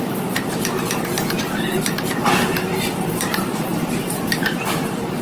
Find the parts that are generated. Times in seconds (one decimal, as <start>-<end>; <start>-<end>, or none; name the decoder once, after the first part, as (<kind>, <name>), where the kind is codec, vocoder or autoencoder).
0.0-5.2 (vocoder, BigVGAN v2)